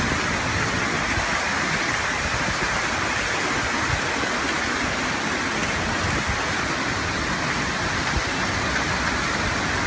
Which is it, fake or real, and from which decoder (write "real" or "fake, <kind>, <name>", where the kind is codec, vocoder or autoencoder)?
real